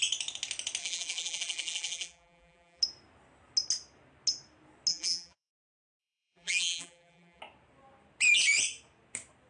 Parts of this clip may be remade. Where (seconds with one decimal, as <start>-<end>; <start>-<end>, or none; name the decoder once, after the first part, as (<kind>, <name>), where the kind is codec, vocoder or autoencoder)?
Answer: 0.8-2.8 (vocoder, BigVGAN v2); 4.9-5.5; 6.0-7.4